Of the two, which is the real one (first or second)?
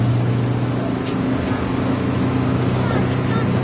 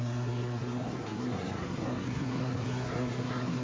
first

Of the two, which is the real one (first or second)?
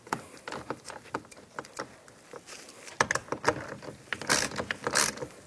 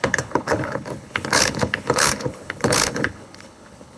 first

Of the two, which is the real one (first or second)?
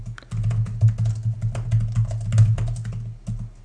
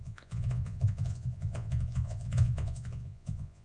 first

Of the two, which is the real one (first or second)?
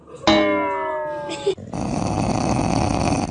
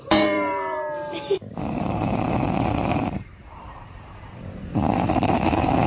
first